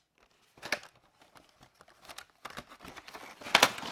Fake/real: real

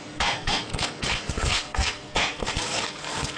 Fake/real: fake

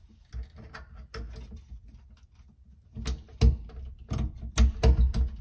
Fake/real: real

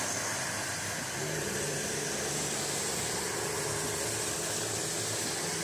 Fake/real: real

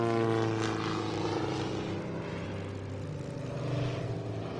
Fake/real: real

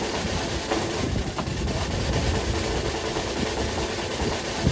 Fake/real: real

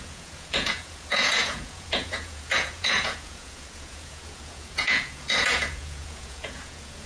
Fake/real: fake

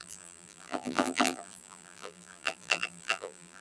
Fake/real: fake